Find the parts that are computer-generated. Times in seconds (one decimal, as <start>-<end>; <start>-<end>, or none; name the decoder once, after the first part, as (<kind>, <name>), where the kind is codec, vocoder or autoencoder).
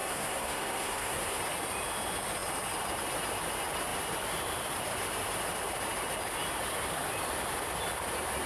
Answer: 0.0-1.4 (codec, SNAC)